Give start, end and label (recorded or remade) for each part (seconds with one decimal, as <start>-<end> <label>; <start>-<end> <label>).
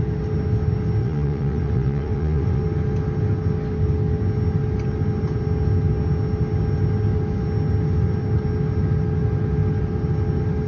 0.0-1.0 recorded; 1.0-2.6 remade; 2.6-10.7 recorded